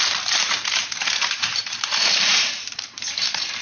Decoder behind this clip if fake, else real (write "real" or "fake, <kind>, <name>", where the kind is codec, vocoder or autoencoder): fake, vocoder, BigVGAN v2